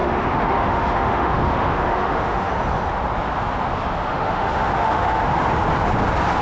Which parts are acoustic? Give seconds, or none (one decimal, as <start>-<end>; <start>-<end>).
2.5-4.1; 5.3-6.4